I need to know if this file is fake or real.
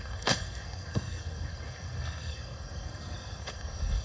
fake